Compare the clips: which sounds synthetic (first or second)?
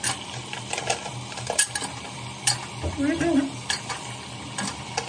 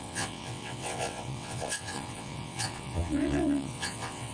second